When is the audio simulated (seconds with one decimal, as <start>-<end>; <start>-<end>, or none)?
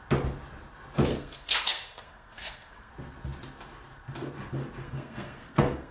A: 1.1-2.9; 4.8-5.9